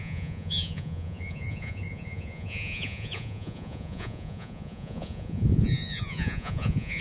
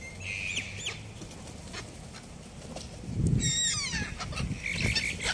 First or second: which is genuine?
second